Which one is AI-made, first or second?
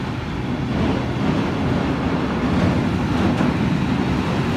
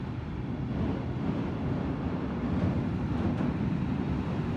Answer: second